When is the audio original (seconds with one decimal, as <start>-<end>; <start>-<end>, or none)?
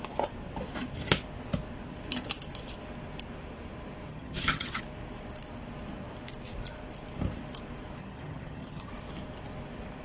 0.0-4.1; 4.8-8.0; 8.9-10.0